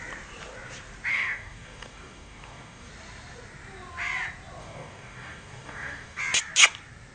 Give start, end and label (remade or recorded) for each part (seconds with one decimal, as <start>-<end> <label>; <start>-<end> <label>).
0.0-1.1 recorded; 1.1-2.9 remade; 2.9-4.6 recorded; 4.6-6.2 remade; 6.2-7.1 recorded